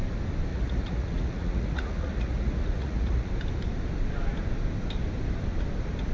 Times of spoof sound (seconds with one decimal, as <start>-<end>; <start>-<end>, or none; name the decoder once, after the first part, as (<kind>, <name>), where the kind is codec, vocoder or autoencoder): 0.5-3.3 (vocoder, Vocos)